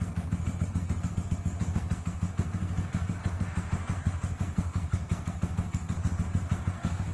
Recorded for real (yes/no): no